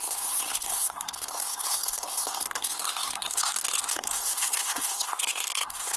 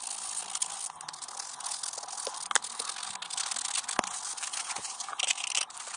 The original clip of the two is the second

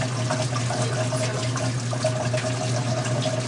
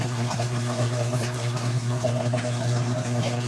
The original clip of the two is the first